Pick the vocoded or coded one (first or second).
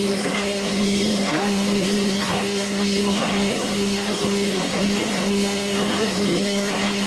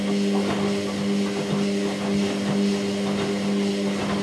first